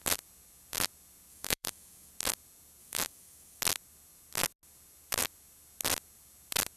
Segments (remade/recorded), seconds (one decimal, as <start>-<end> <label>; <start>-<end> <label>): 0.0-1.3 recorded; 1.3-2.1 remade; 2.1-2.8 recorded; 2.8-3.6 remade; 3.6-6.8 recorded